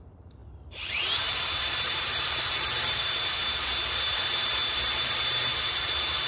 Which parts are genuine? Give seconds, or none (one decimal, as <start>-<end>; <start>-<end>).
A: none